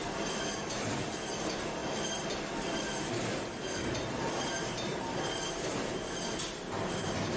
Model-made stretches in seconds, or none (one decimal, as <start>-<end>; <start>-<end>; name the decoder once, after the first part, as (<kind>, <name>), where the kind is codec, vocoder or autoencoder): 1.8-3.1 (vocoder, BigVGAN v2); 4.9-5.7